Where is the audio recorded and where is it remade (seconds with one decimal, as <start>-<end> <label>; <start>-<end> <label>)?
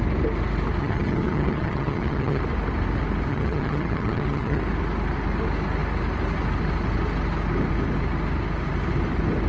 0.0-0.8 recorded; 0.8-2.4 remade; 2.4-3.3 recorded; 3.3-4.6 remade; 4.6-9.5 recorded